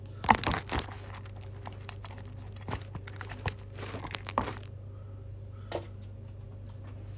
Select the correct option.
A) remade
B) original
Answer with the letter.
B